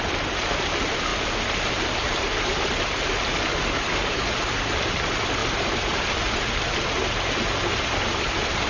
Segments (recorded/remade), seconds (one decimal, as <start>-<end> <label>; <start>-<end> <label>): 0.0-3.3 recorded; 3.3-4.3 remade; 4.3-8.7 recorded